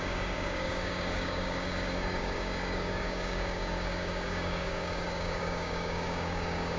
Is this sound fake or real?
fake